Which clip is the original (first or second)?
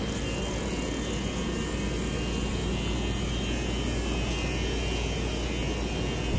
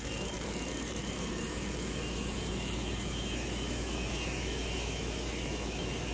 first